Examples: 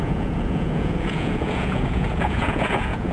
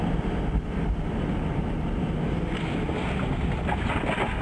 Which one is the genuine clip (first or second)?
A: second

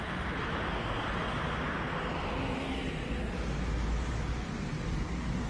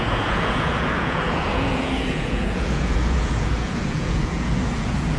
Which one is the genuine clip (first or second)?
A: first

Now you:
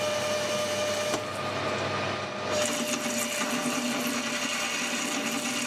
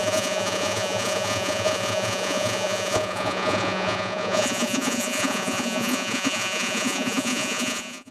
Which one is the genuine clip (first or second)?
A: first